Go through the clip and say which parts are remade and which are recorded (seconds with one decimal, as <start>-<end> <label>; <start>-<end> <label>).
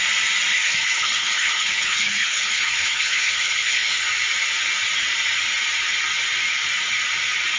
0.0-0.5 recorded; 0.5-4.0 remade; 4.0-7.6 recorded